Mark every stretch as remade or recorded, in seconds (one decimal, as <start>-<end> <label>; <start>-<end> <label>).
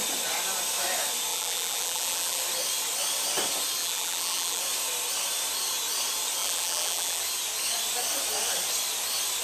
0.0-1.3 recorded; 1.3-2.4 remade; 2.4-3.8 recorded; 3.8-4.6 remade; 4.6-6.4 recorded; 6.4-7.2 remade; 7.2-9.4 recorded